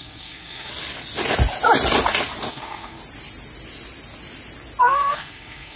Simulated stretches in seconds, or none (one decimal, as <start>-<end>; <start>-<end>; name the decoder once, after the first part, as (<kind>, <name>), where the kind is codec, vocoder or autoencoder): 0.0-0.7 (codec, SNAC); 2.5-3.0; 4.8-5.8